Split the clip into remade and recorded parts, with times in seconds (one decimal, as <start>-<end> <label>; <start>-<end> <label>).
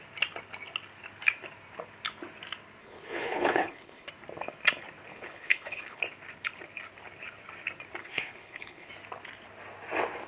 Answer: 0.0-2.8 recorded; 2.8-4.1 remade; 4.1-5.1 recorded; 5.1-6.0 remade; 6.0-8.0 recorded; 8.0-8.9 remade; 8.9-10.3 recorded